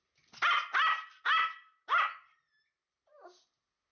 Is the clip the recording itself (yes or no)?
yes